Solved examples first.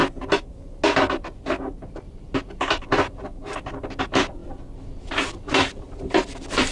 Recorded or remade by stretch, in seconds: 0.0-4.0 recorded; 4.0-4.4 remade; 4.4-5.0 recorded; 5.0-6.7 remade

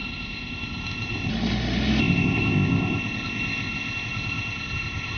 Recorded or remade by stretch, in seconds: 0.0-1.3 remade; 1.3-2.0 recorded; 2.0-5.2 remade

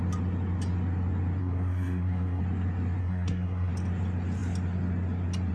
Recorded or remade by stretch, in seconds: 0.0-1.4 recorded; 1.4-2.4 remade; 2.4-3.0 recorded; 3.0-3.7 remade; 3.7-5.5 recorded